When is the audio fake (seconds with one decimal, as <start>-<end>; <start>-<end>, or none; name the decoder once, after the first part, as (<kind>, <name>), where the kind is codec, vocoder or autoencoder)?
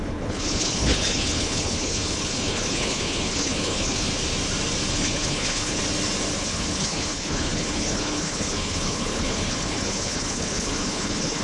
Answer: 0.0-4.1 (codec, HILCodec); 4.9-5.8; 6.4-11.4